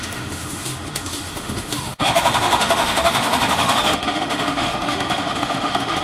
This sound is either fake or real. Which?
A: fake